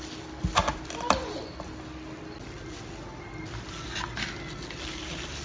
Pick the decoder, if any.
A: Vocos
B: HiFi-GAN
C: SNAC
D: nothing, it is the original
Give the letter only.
D